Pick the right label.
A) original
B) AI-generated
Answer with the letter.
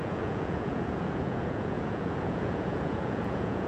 B